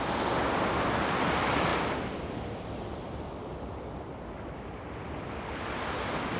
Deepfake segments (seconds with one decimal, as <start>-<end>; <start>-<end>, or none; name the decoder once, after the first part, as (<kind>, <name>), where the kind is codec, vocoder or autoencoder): none